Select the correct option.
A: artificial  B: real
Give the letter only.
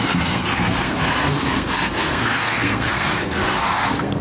A